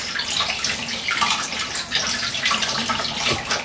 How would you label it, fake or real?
real